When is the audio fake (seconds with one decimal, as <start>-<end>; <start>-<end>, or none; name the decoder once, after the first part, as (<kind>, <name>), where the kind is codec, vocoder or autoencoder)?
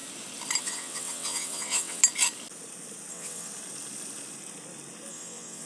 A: 0.6-2.0 (vocoder, WaveNeXt); 3.1-3.5; 5.1-5.7